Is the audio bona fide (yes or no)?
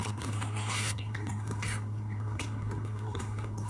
no